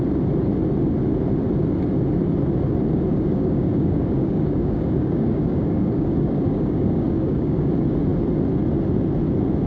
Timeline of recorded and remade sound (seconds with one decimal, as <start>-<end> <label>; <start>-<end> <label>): 0.0-3.1 recorded; 3.1-7.7 remade; 7.7-9.7 recorded